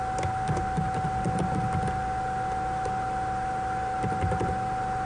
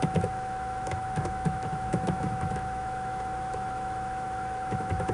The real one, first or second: first